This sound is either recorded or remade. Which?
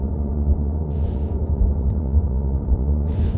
remade